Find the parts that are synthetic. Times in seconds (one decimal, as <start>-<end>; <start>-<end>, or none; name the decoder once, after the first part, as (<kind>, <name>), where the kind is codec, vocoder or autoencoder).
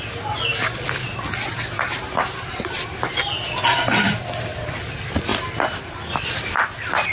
none